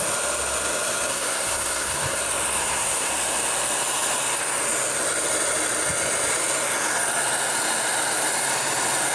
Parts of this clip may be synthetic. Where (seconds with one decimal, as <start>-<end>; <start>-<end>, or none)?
1.1-2.2; 2.6-3.1